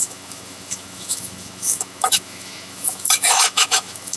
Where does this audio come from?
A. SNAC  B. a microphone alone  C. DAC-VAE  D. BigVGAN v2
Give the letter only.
C